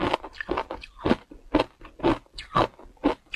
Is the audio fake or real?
real